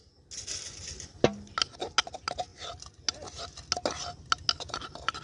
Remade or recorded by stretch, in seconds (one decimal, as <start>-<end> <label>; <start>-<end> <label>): 0.0-5.2 recorded